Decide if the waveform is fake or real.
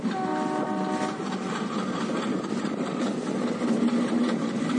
real